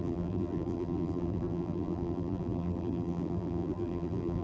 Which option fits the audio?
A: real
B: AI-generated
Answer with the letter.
B